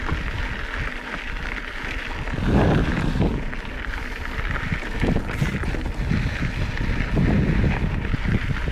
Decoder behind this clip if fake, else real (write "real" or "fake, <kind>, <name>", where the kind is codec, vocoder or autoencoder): real